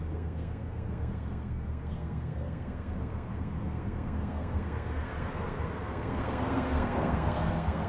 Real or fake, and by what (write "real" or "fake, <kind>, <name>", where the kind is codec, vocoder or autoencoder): fake, codec, SNAC